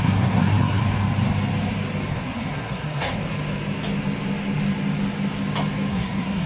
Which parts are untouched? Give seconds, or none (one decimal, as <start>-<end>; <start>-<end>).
0.8-2.1; 3.2-5.9